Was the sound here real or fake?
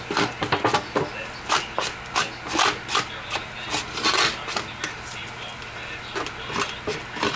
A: real